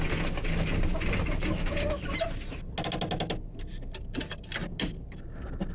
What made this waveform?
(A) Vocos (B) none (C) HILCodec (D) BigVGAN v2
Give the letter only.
B